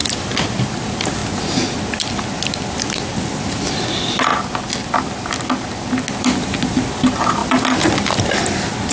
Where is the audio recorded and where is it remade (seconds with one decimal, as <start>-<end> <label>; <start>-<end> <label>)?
0.0-1.2 remade; 1.2-1.8 recorded; 1.8-4.3 remade; 4.3-6.1 recorded; 6.1-8.9 remade